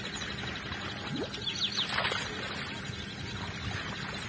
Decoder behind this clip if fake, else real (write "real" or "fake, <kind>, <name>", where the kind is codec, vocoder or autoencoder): real